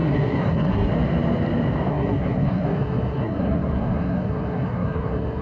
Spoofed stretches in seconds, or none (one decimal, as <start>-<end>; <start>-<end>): 0.0-0.9; 1.9-5.4